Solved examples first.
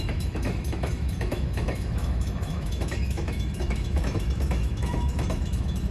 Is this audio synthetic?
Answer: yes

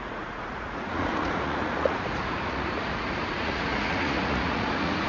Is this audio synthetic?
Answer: yes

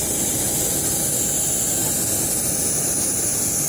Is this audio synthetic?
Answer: no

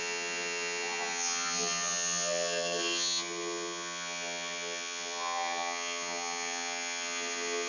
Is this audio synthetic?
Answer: yes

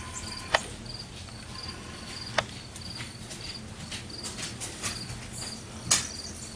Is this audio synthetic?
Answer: no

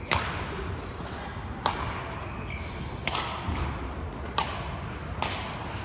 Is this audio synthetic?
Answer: no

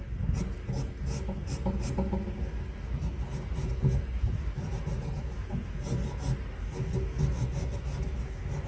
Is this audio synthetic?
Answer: no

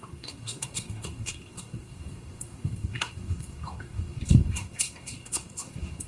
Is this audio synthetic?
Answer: yes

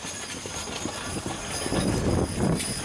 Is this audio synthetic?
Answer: no